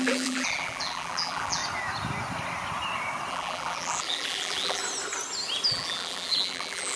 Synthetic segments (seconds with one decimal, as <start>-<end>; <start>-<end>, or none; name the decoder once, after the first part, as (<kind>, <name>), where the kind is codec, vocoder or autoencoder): 0.0-1.6 (vocoder, BigVGAN v2); 3.3-4.8; 5.7-7.0